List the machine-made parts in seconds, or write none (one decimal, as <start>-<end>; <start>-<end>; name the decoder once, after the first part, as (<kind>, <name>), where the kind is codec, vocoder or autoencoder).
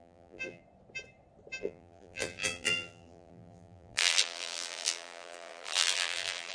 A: 0.0-0.6 (vocoder, BigVGAN v2); 1.6-6.5